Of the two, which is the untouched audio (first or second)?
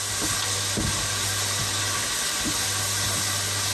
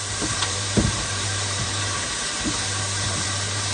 first